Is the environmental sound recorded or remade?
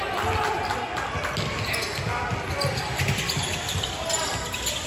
recorded